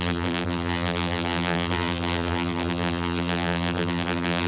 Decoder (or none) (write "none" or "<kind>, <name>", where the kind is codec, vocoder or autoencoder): vocoder, BigVGAN v2